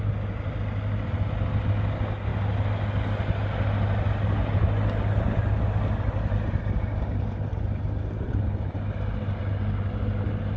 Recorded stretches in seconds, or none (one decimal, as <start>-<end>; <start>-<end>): 0.0-10.6